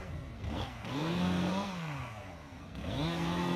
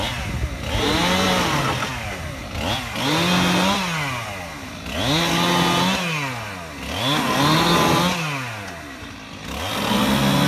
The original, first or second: second